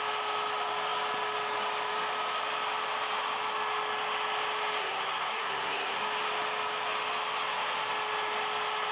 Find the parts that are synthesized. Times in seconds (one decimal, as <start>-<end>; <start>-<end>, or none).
4.8-6.0